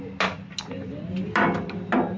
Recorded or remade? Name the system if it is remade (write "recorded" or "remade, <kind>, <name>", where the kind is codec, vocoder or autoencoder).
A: recorded